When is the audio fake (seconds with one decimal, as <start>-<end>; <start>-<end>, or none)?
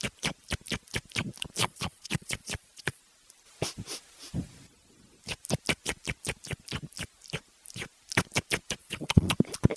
1.6-3.0; 8.8-9.3